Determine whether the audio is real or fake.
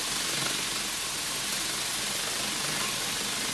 real